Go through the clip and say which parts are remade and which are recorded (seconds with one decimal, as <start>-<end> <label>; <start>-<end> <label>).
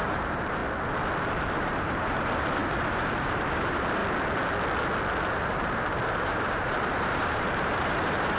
0.0-0.6 remade; 0.6-1.2 recorded; 1.2-4.0 remade; 4.0-5.3 recorded; 5.3-8.4 remade